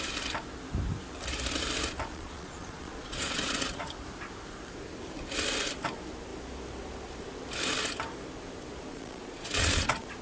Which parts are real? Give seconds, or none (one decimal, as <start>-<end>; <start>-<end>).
0.0-2.1; 3.9-8.9